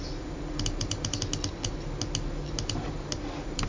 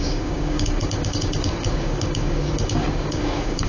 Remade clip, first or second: second